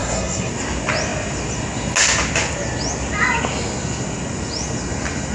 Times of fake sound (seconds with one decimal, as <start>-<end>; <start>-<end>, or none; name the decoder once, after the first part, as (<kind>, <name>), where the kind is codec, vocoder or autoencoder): 0.0-0.5 (codec, SNAC)